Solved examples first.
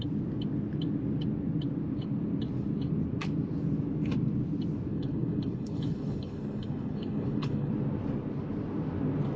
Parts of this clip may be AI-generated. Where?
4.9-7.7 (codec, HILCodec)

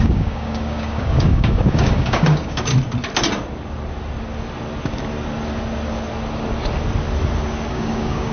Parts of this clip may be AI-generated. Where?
0.0-2.7 (codec, DAC); 7.7-8.3

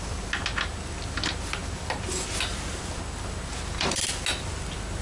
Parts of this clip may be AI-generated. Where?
none

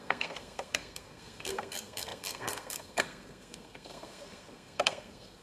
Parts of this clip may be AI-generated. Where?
0.0-5.4 (codec, SNAC)

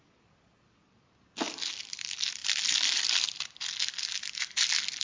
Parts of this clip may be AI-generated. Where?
none

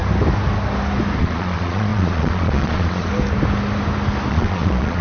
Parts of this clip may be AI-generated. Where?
1.2-3.1 (vocoder, Vocos); 4.3-5.0